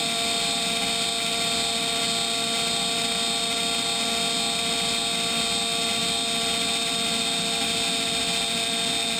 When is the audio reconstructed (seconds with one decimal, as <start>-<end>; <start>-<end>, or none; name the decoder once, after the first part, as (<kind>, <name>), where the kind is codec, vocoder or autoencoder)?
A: none